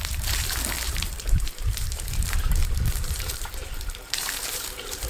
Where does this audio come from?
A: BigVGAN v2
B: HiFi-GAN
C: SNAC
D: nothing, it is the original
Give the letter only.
A